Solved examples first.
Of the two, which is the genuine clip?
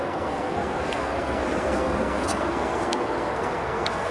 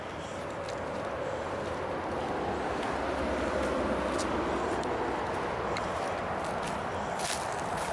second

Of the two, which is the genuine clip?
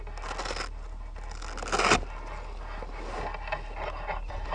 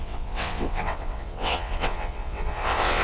first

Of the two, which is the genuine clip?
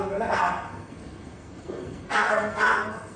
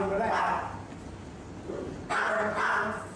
second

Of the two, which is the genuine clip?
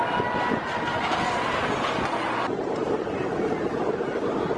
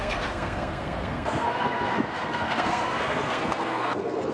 first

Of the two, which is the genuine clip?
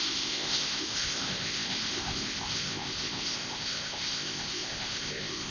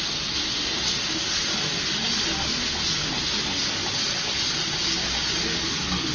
second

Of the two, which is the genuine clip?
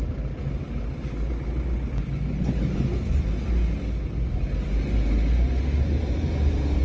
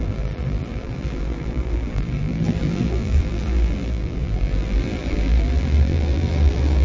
first